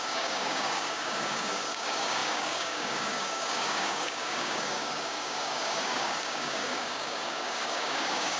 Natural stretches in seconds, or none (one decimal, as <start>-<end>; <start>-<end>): none